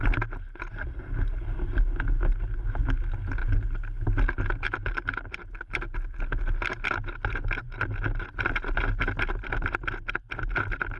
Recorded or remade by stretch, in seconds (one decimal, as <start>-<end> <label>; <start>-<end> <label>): 0.0-11.0 recorded